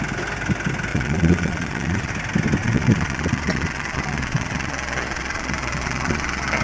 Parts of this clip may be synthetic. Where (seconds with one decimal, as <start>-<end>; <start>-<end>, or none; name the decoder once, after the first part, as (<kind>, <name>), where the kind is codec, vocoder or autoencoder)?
0.9-2.1 (vocoder, Vocos); 2.6-6.6